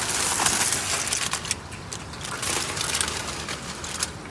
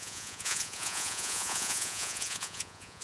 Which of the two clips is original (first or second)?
first